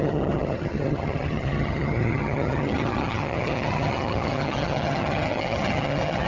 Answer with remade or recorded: remade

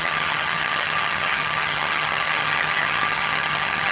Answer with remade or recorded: remade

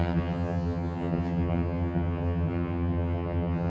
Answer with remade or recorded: remade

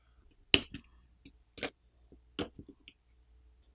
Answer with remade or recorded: recorded